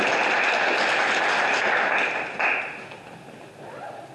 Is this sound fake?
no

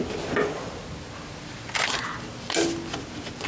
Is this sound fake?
no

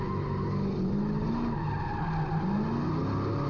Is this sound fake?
no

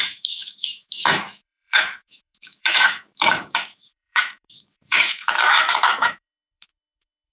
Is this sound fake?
yes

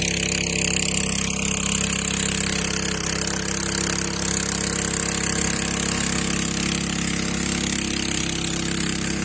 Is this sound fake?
no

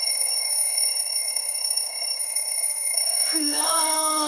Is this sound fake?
yes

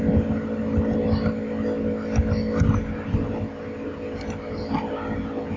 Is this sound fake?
no